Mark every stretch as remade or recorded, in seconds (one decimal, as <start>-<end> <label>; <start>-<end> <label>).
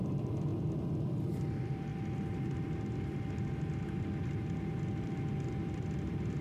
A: 0.0-0.5 remade; 0.5-1.2 recorded; 1.2-1.9 remade; 1.9-5.7 recorded; 5.7-6.4 remade